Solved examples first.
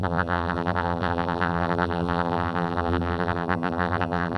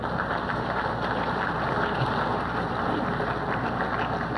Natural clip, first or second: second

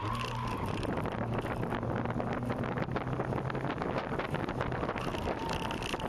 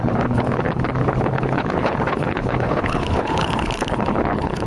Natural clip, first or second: first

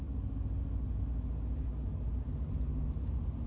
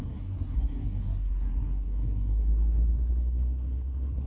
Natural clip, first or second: first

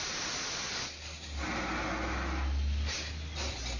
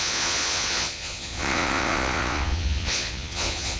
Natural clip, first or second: first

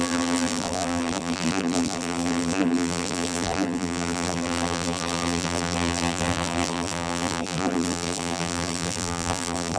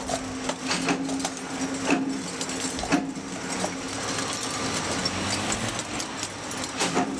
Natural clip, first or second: second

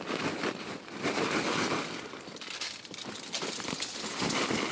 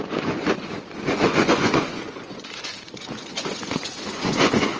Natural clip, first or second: first